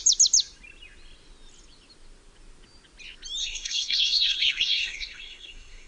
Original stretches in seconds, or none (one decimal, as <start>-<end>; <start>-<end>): 0.0-3.4